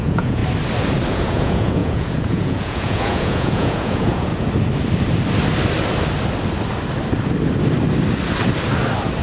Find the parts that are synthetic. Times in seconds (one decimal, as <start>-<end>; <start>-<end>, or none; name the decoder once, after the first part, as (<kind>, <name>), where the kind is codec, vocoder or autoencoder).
0.0-0.4 (vocoder, Vocos); 1.1-4.3